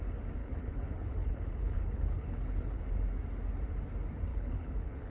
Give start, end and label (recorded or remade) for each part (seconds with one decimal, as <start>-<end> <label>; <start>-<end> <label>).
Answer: 0.0-0.4 recorded; 0.4-2.8 remade; 2.8-4.3 recorded; 4.3-5.1 remade